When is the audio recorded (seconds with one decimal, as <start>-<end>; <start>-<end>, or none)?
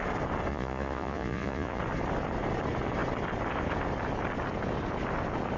0.0-0.5; 1.8-5.6